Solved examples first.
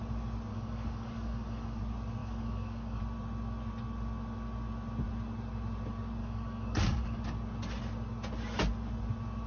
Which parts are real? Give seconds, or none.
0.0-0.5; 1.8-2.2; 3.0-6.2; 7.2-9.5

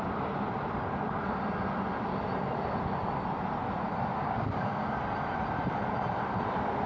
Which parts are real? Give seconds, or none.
0.0-4.2; 5.0-6.9

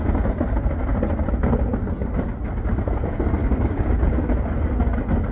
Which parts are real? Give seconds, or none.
0.0-3.4; 3.9-5.3

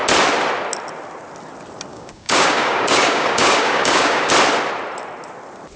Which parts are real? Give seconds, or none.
0.0-1.9; 4.3-5.8